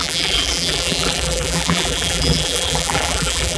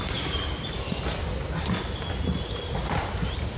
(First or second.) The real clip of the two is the second